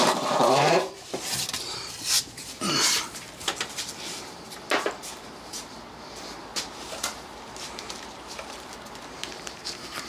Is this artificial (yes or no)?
yes